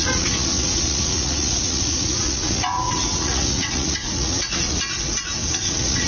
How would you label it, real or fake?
fake